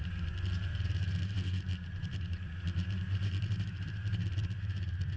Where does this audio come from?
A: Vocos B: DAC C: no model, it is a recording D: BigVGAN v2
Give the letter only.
D